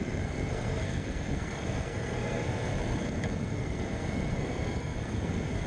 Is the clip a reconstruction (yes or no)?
yes